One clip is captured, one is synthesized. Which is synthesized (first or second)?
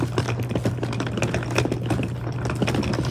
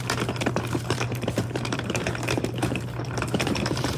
second